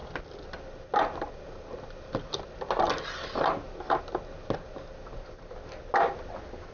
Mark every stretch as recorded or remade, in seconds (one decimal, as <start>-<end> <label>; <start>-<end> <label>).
0.0-6.7 recorded